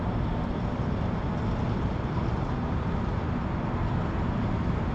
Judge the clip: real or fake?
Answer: real